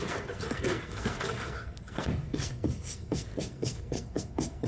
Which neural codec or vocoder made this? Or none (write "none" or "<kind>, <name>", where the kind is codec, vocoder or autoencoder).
codec, SNAC